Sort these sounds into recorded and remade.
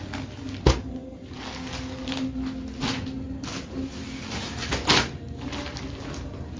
recorded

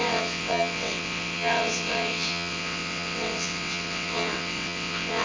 remade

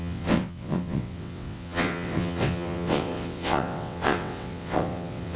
remade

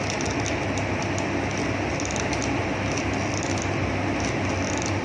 recorded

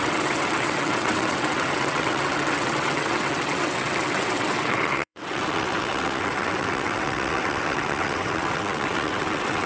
remade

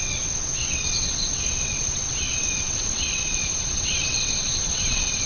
remade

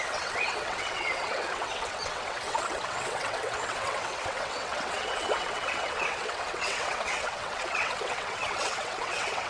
remade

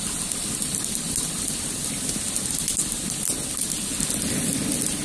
recorded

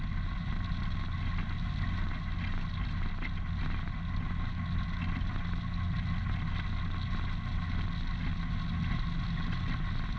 recorded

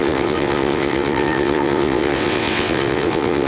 remade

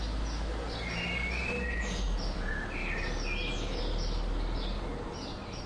recorded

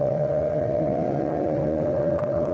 remade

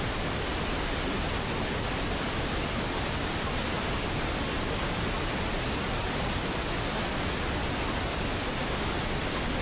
recorded